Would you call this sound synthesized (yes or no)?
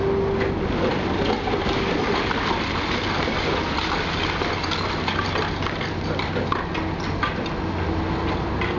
no